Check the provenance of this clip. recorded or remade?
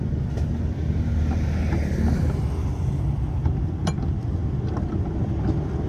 recorded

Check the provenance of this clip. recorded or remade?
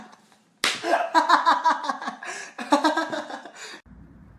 recorded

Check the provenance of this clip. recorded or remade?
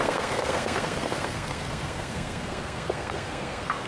remade